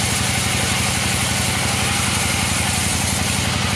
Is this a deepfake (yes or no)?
no